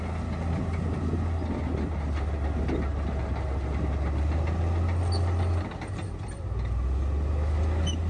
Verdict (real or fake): real